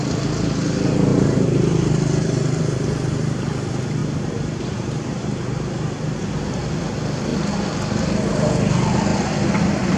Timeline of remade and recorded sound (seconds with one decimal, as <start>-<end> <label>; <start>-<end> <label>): 0.0-1.1 recorded; 1.1-2.6 remade; 2.6-4.0 recorded; 4.0-5.0 remade; 5.0-10.0 recorded